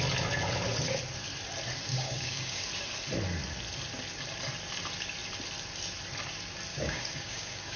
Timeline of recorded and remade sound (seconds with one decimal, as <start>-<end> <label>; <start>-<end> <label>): 0.0-1.9 recorded; 1.9-2.6 remade; 2.6-6.7 recorded; 6.7-7.8 remade